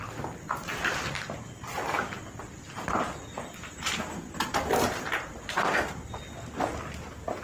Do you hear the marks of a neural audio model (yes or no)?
no